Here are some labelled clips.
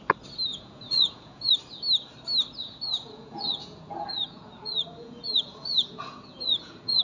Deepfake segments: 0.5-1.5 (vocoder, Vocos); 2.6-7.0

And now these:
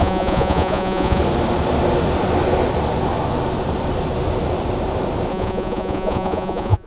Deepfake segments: 0.0-1.2 (vocoder, Vocos); 5.3-6.9

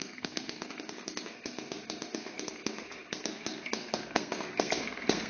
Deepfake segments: 0.0-5.3 (codec, SNAC)

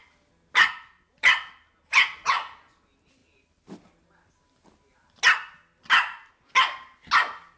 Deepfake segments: none

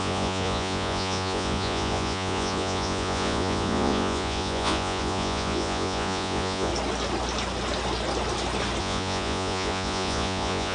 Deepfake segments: 0.0-6.7 (vocoder, Vocos); 8.8-10.7

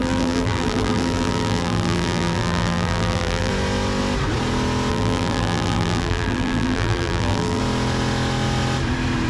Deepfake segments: 0.0-3.5 (vocoder, BigVGAN v2); 4.9-7.6